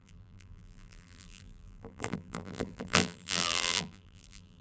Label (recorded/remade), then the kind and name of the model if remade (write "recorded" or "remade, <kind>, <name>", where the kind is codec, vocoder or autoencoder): remade, vocoder, BigVGAN v2